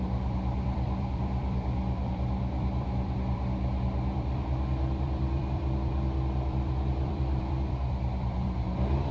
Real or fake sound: fake